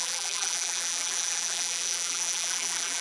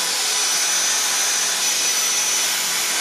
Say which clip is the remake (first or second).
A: first